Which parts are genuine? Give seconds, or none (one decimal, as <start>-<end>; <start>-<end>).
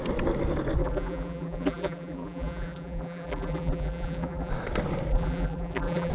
0.0-0.8; 4.5-5.1